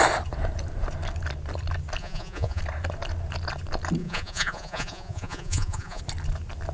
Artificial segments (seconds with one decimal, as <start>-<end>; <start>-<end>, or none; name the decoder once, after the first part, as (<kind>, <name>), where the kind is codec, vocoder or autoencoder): 2.0-2.6 (vocoder, Vocos); 4.0-6.0